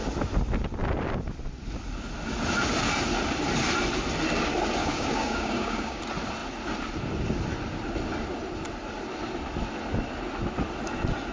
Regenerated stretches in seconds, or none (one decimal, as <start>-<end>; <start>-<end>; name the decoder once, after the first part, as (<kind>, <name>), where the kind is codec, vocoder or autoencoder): 4.8-6.0 (codec, DAC)